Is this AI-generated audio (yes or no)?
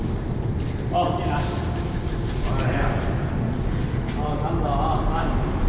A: no